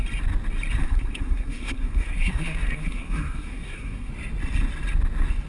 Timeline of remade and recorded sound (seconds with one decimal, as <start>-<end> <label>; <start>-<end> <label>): 0.0-0.8 recorded; 0.8-4.1 remade; 4.1-5.5 recorded